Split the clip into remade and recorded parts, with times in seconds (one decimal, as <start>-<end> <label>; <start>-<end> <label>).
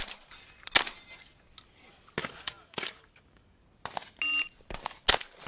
0.0-2.2 recorded; 2.2-3.6 remade; 3.6-5.5 recorded